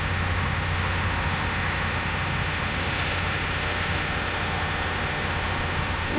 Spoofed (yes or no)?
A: yes